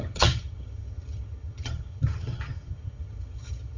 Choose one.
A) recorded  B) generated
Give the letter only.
B